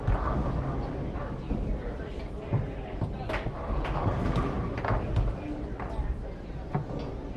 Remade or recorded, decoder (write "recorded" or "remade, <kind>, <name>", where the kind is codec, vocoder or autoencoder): recorded